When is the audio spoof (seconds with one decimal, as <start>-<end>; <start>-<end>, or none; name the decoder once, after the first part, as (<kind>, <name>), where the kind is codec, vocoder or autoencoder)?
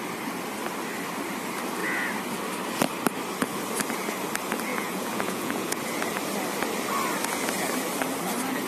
4.7-5.7 (vocoder, Vocos)